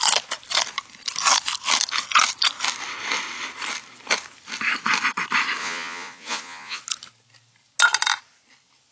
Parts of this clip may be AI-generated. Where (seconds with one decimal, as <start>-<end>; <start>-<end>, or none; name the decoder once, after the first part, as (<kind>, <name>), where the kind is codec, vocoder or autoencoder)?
5.6-6.8 (vocoder, Vocos)